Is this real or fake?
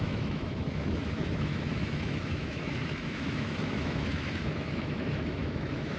fake